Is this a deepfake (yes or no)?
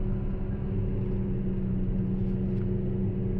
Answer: no